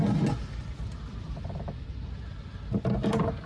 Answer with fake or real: real